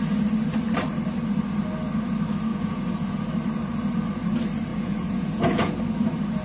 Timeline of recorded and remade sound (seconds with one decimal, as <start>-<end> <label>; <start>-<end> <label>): 0.0-2.5 recorded; 2.5-3.2 remade; 3.2-4.7 recorded; 4.7-5.8 remade; 5.8-6.4 recorded